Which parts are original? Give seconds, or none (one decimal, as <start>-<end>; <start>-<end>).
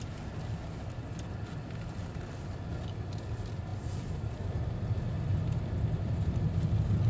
0.0-7.1